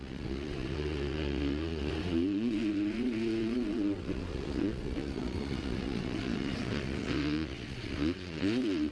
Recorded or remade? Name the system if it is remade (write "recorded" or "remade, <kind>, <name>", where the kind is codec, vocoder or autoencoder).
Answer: remade, vocoder, WaveNeXt